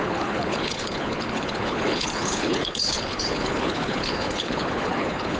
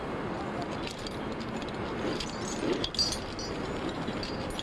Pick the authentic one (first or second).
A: second